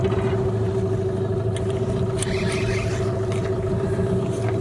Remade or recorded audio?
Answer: recorded